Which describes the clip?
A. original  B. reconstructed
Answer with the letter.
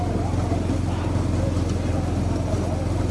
A